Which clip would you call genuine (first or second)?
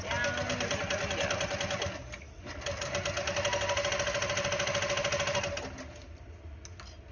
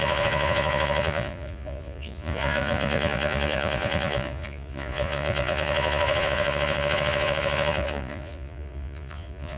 first